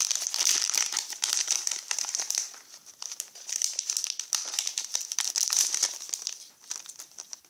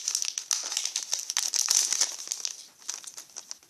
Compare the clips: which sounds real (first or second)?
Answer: second